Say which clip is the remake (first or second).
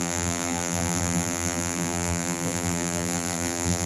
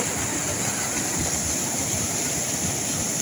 first